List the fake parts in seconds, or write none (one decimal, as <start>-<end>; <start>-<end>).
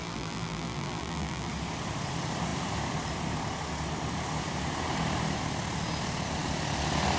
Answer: 0.0-1.5